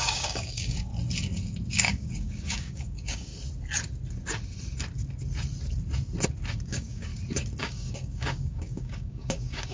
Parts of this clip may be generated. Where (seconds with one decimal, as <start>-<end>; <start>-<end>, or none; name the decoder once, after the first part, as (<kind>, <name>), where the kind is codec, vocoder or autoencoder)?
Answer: 0.0-0.9 (codec, DAC); 1.7-3.3; 6.6-7.1; 7.6-9.7